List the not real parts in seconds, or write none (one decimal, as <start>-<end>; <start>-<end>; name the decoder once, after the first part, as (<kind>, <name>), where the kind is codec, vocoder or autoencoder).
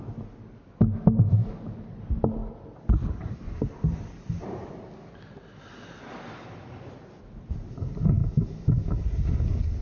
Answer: 8.2-9.0 (autoencoder, DAC-VAE)